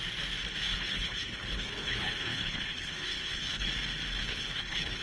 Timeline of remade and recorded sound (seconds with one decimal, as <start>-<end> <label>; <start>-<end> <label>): 0.0-0.7 recorded; 0.7-3.7 remade; 3.7-4.2 recorded; 4.2-5.0 remade